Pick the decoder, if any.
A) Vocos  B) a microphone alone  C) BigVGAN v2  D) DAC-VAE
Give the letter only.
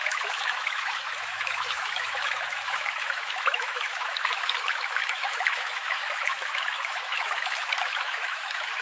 D